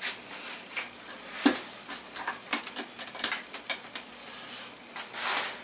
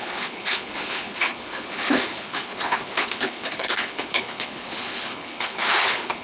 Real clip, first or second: first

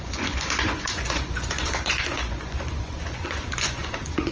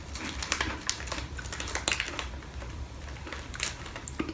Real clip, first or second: second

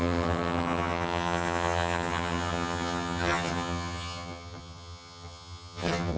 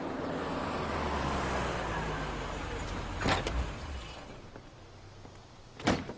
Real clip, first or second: second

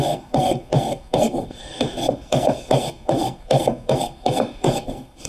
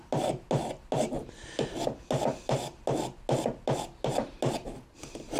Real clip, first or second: second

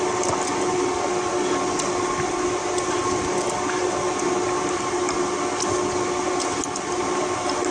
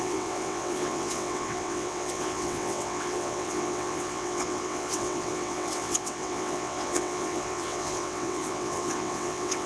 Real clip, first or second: first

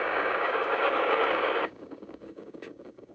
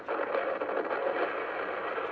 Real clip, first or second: second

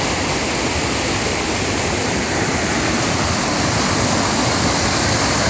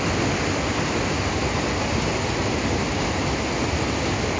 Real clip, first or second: second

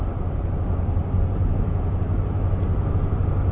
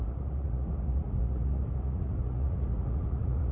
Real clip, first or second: first